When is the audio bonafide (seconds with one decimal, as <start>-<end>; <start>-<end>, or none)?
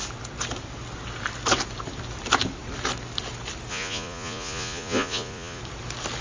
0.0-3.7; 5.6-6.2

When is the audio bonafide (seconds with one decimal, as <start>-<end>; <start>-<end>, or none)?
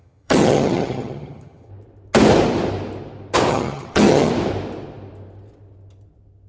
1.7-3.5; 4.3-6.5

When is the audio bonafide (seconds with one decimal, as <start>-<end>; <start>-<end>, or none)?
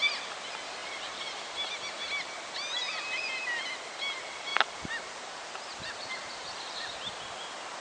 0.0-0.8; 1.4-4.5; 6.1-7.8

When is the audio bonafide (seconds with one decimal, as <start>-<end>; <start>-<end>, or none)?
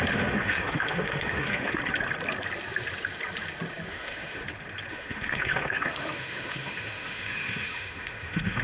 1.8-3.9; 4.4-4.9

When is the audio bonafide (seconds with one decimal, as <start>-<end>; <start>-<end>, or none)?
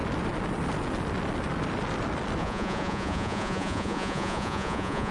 0.0-2.4